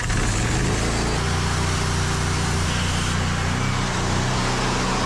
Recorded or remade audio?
recorded